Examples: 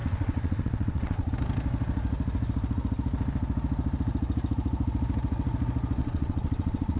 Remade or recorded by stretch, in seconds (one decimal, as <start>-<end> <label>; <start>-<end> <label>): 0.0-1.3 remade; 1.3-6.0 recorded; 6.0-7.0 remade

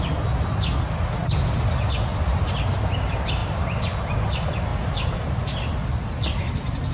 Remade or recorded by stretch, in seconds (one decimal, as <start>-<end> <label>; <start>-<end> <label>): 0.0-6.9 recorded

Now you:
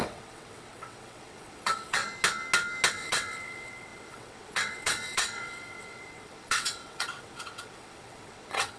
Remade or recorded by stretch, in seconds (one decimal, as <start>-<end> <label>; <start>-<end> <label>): 0.0-2.0 remade; 2.0-2.9 recorded; 2.9-8.8 remade

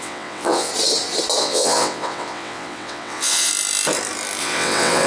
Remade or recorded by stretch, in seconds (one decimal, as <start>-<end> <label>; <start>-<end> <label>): 0.0-0.7 remade; 0.7-1.4 recorded; 1.4-3.5 remade; 3.5-4.4 recorded; 4.4-5.1 remade

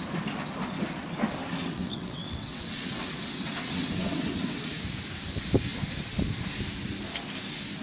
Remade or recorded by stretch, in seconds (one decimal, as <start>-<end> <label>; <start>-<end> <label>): 0.0-1.6 recorded; 1.6-4.7 remade; 4.7-7.8 recorded

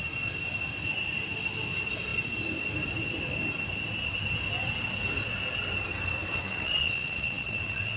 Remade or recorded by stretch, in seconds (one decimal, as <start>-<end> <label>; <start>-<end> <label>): 0.0-6.3 recorded; 6.3-8.0 remade

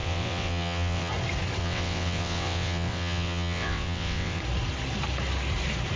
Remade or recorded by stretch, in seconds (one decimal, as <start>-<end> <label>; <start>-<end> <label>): 0.0-1.1 remade; 1.1-1.6 recorded; 1.6-4.4 remade; 4.4-6.0 recorded